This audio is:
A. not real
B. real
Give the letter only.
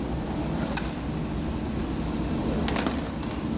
B